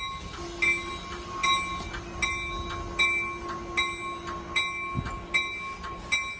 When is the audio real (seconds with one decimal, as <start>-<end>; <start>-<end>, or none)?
0.0-6.4

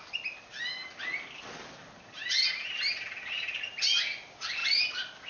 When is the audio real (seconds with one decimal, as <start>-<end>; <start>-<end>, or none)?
0.0-5.3

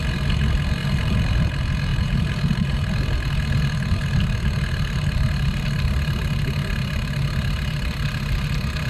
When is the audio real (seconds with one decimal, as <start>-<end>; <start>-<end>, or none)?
0.0-0.8; 1.3-1.9; 2.9-8.9